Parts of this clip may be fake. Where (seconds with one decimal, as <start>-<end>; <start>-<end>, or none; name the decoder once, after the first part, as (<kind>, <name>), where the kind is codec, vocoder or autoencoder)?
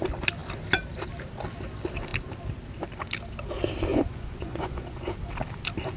3.9-5.1 (vocoder, Vocos)